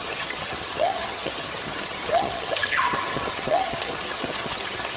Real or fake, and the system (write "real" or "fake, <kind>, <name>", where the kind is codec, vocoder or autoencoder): fake, vocoder, HiFi-GAN